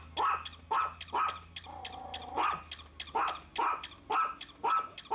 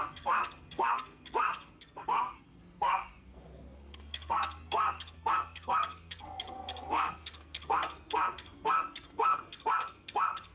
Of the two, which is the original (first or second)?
first